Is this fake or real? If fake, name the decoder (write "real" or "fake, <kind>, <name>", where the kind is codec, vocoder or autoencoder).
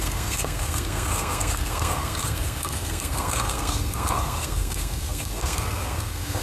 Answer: fake, codec, SNAC